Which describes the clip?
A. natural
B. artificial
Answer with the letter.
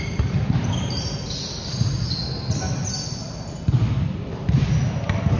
A